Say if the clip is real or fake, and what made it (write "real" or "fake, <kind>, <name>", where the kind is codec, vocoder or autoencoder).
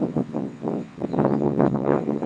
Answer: fake, vocoder, WaveNeXt